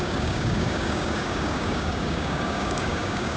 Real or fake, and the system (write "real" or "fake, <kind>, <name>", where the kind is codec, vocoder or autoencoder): fake, codec, DAC